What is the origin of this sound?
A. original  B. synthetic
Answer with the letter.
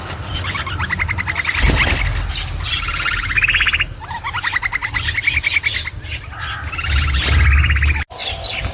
A